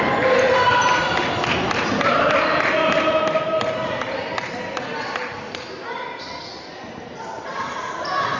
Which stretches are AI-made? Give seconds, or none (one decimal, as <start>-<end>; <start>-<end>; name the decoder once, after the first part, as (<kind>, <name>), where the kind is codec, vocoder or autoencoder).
none